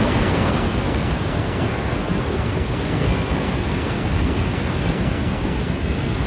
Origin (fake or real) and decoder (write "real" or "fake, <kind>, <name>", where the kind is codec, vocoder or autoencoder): fake, codec, SNAC